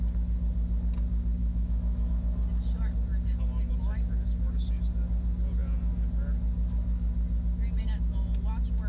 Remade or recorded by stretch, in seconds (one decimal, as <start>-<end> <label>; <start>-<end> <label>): 0.0-1.4 recorded; 1.4-2.1 remade; 2.1-8.9 recorded